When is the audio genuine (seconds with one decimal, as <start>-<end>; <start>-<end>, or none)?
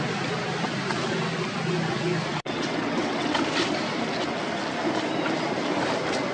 0.0-2.3; 3.4-6.3